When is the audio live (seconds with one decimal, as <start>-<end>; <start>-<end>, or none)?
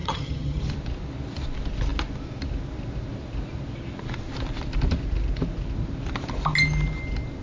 0.6-7.4